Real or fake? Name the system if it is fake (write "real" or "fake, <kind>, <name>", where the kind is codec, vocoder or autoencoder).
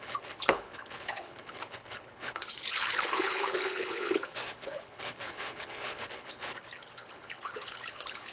fake, codec, HILCodec